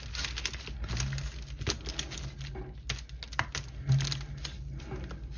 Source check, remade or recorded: recorded